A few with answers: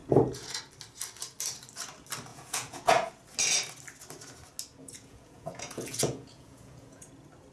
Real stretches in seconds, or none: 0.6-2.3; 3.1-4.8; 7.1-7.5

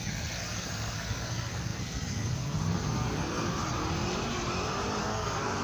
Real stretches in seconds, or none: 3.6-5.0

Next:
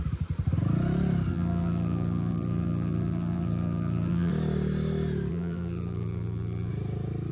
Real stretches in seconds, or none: 0.0-1.3; 4.3-5.3; 6.7-7.3